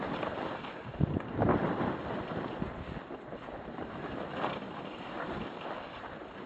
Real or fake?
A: real